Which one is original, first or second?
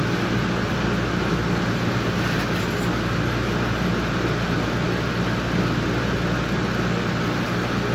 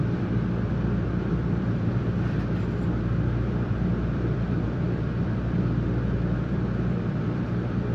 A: first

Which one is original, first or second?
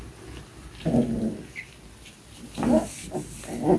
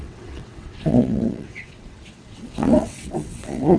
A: first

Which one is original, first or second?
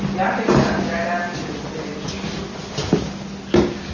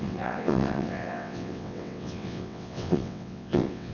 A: first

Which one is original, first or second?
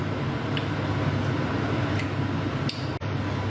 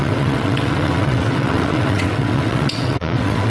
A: first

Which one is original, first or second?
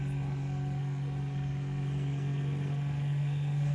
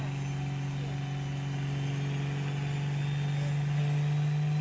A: second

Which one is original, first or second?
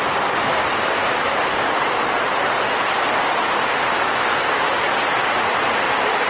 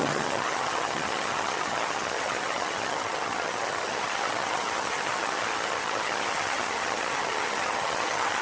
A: first